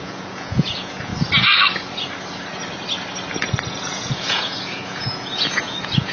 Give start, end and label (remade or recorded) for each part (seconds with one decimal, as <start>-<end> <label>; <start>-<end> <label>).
0.0-1.1 remade; 1.1-3.3 recorded; 3.3-6.1 remade